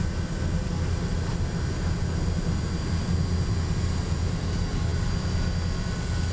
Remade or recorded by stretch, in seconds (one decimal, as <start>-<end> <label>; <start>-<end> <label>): 0.0-6.3 recorded